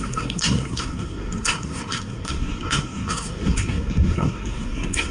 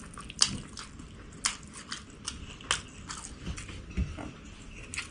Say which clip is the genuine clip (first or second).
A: second